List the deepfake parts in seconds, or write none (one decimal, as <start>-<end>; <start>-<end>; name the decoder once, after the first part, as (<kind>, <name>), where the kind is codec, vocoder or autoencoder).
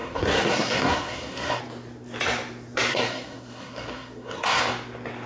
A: 0.0-1.6 (codec, SNAC); 2.9-4.6